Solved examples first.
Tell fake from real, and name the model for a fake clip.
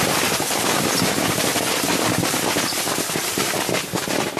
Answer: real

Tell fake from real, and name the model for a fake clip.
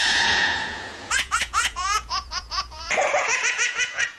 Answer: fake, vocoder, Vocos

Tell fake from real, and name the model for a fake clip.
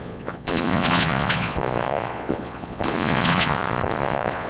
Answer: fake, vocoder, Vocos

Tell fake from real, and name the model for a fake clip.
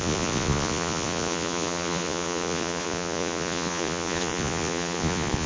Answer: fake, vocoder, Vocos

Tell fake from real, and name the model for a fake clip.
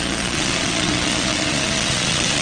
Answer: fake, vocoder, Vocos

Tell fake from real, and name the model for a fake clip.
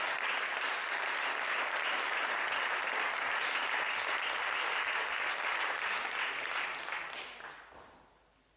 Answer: real